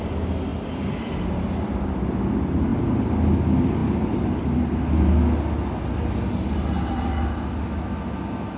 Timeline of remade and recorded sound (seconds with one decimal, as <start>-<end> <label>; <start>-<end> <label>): 0.0-8.6 recorded